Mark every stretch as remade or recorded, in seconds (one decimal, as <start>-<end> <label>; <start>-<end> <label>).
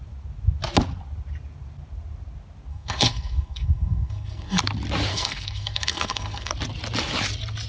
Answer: 0.0-2.7 recorded; 2.7-4.6 remade; 4.6-5.1 recorded; 5.1-6.5 remade; 6.5-7.7 recorded